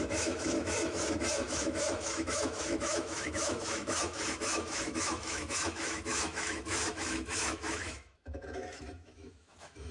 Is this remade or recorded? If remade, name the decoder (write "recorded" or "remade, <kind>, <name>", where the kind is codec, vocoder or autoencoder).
remade, autoencoder, DAC-VAE